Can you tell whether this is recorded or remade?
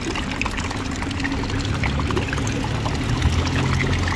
recorded